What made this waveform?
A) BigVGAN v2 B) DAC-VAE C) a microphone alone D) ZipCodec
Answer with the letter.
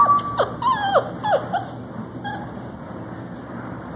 C